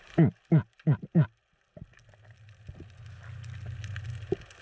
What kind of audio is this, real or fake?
real